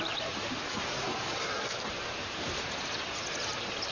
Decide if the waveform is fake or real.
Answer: fake